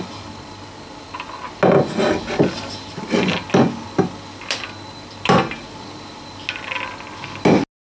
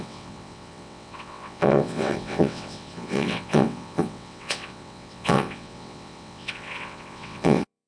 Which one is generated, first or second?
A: second